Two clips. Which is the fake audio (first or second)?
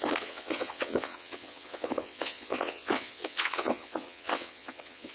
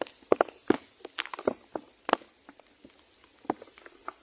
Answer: first